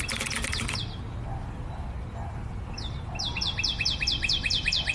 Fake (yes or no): no